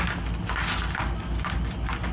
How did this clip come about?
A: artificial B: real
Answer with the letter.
B